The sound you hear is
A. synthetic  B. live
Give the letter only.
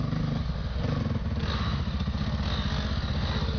B